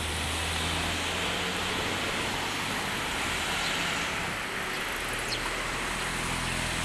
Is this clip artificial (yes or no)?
no